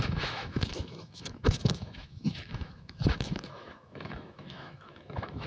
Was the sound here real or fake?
fake